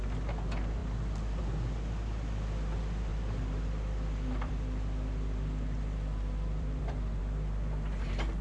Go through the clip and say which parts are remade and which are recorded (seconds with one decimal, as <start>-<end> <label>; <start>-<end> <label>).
0.0-0.8 recorded; 0.8-1.4 remade; 1.4-3.1 recorded; 3.1-7.2 remade; 7.2-8.4 recorded